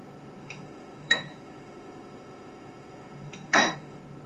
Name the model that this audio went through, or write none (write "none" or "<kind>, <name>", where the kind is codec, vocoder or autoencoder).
autoencoder, DAC-VAE